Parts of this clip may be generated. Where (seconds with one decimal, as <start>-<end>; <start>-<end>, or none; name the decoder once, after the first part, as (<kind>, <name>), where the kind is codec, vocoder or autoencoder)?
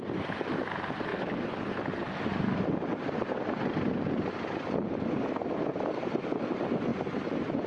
0.0-1.1 (vocoder, BigVGAN v2); 4.3-7.7